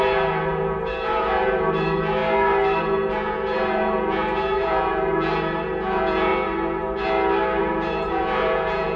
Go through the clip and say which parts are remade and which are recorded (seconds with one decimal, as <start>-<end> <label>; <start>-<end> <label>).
0.0-2.2 remade; 2.2-2.8 recorded; 2.8-6.3 remade; 6.3-7.6 recorded; 7.6-9.0 remade